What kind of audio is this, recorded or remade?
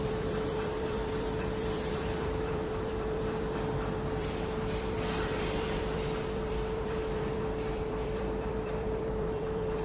remade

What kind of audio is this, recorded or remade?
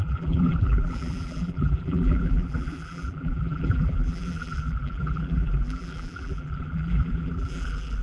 remade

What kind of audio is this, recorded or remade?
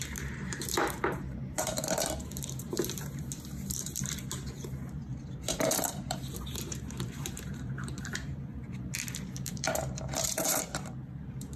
remade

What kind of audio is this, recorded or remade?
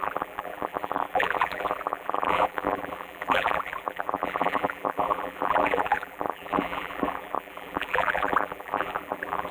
remade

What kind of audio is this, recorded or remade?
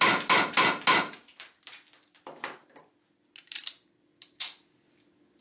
recorded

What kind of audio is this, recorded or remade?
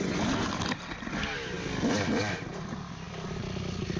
recorded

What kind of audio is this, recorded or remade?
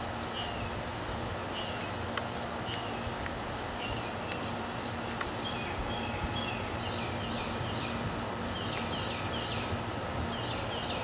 recorded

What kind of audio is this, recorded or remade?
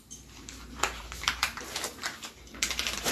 remade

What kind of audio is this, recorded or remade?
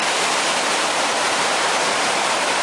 remade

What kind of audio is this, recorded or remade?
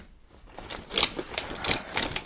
remade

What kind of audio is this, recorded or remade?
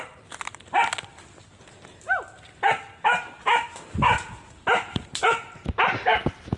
recorded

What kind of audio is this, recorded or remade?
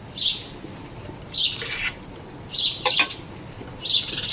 recorded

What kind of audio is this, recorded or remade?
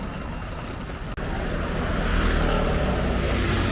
recorded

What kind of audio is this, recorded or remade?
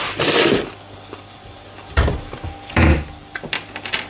remade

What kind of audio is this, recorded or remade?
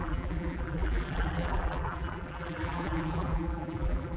remade